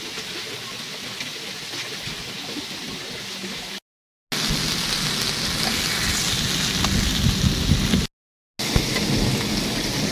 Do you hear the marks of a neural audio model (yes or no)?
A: no